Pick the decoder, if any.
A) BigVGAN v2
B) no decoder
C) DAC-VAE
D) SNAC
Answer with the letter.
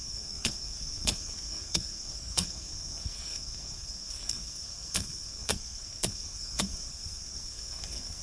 D